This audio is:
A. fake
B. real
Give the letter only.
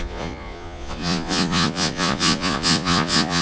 A